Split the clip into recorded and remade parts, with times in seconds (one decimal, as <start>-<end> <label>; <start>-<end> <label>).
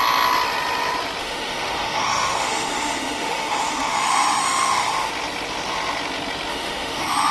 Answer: 0.0-1.2 recorded; 1.2-5.1 remade; 5.1-6.5 recorded; 6.5-7.3 remade